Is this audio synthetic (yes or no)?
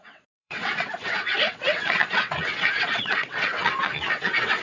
yes